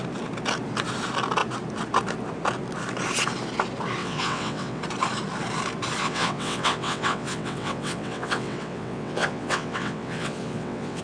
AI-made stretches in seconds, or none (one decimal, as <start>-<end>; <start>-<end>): 4.0-4.8; 6.0-11.0